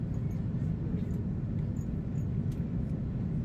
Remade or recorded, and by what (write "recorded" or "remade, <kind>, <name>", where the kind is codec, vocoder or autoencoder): recorded